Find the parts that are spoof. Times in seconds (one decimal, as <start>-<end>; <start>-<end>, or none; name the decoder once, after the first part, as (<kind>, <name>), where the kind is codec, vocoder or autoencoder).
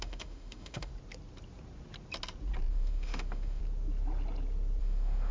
0.0-0.9 (autoencoder, DAC-VAE); 2.7-3.6; 4.8-5.3